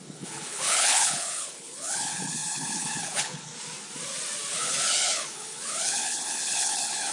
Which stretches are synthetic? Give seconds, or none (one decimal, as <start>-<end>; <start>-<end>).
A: 0.0-3.5; 4.5-7.1